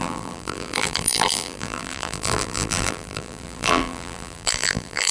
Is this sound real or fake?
fake